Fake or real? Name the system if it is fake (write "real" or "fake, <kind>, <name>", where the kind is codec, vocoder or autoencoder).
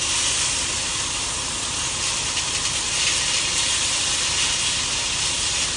real